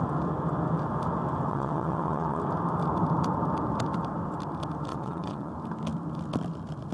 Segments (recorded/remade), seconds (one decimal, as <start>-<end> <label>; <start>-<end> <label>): 0.0-1.5 recorded; 1.5-2.4 remade; 2.4-4.9 recorded; 4.9-5.5 remade; 5.5-6.9 recorded